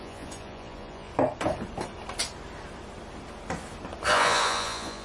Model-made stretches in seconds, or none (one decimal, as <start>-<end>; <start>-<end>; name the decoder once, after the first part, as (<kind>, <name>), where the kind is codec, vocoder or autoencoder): 0.0-1.1 (vocoder, Vocos); 4.1-5.0